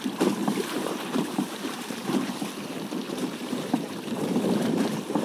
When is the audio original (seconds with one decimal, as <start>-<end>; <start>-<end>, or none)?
0.0-0.4; 2.3-3.2; 4.4-5.2